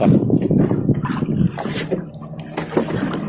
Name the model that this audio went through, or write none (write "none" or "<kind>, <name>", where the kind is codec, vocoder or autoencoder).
none